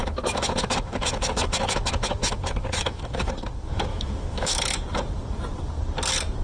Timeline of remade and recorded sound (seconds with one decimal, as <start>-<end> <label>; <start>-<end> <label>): 0.0-3.3 remade; 3.3-3.9 recorded; 3.9-4.6 remade; 4.6-6.4 recorded